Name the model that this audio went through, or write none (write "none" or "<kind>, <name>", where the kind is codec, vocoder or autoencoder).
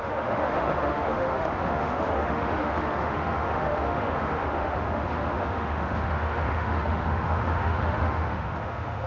autoencoder, DAC-VAE